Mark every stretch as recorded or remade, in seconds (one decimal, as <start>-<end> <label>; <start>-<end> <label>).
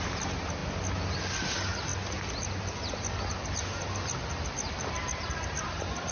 0.0-6.1 recorded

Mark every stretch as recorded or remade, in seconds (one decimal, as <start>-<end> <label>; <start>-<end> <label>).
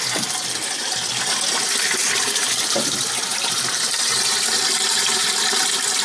0.0-2.0 recorded; 2.0-5.6 remade; 5.6-6.0 recorded